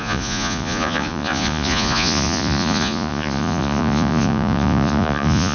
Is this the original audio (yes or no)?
no